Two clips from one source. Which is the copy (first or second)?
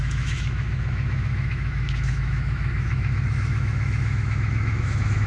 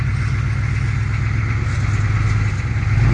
first